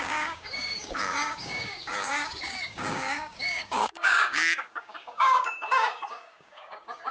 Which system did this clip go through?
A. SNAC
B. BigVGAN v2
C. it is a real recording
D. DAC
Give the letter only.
D